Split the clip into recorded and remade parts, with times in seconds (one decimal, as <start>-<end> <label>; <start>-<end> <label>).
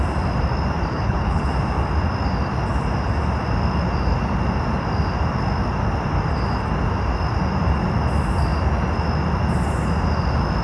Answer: 0.0-0.9 recorded; 0.9-1.5 remade; 1.5-10.6 recorded